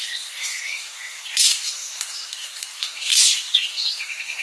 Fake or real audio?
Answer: fake